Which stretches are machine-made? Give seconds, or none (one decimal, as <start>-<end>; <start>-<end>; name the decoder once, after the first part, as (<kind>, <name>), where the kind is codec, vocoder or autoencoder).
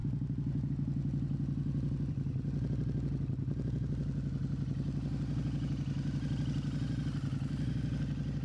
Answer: none